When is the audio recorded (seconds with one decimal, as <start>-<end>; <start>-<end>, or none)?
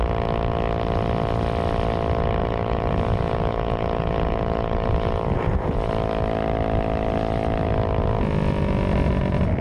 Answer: 0.0-2.4; 5.9-9.6